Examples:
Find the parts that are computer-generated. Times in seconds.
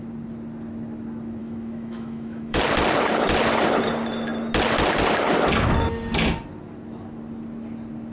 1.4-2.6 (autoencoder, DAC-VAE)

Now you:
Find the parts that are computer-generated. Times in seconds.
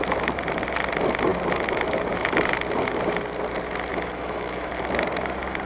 3.9-4.7 (autoencoder, DAC-VAE)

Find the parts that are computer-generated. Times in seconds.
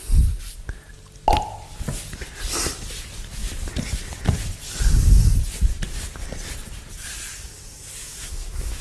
8.0-8.8 (autoencoder, DAC-VAE)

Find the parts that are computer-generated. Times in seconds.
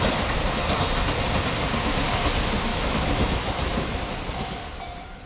2.7-4.0 (autoencoder, DAC-VAE)